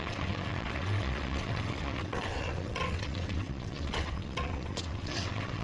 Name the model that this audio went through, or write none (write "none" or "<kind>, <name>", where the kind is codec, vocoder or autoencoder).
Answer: vocoder, WaveNeXt